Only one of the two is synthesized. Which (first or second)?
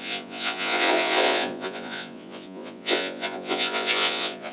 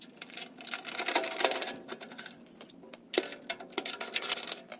first